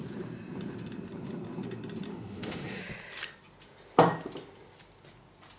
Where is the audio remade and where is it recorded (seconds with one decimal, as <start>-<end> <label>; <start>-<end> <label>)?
0.0-2.1 recorded; 2.1-2.8 remade; 2.8-5.6 recorded